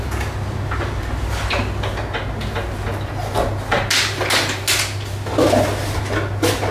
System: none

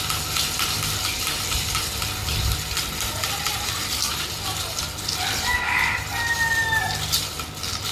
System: none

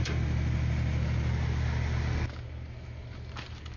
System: none